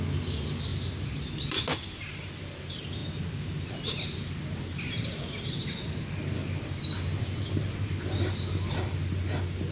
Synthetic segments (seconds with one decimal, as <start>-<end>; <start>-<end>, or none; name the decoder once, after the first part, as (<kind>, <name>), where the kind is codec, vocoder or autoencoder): none